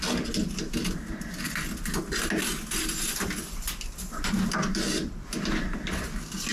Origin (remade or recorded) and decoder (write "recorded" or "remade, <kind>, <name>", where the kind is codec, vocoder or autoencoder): recorded